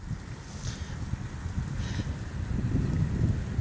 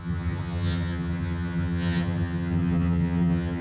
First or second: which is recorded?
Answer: first